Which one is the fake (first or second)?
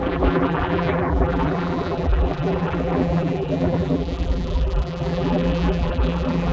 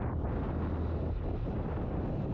first